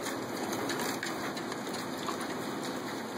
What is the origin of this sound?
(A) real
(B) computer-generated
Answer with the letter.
A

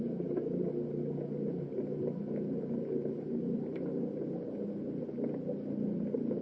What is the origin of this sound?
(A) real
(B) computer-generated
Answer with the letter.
A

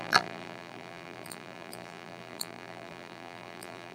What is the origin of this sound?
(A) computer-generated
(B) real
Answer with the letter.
A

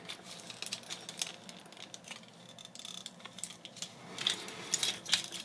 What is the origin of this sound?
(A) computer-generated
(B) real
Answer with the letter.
B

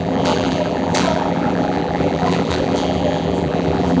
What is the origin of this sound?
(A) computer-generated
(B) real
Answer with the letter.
A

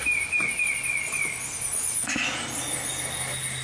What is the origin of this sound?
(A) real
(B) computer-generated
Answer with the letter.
A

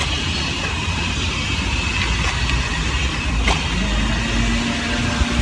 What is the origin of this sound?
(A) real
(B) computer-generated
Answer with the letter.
A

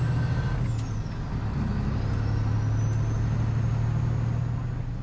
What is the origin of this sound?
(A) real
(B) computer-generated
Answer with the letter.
A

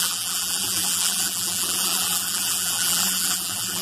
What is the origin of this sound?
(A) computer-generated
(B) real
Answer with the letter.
A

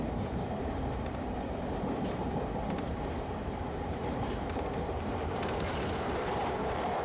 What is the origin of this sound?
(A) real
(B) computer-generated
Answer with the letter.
B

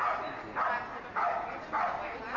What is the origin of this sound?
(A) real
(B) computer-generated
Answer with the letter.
A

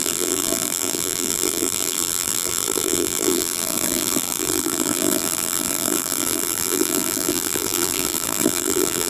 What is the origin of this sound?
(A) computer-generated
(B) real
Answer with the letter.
A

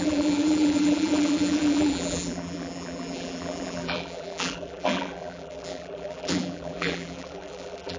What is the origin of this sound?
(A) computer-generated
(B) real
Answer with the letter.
A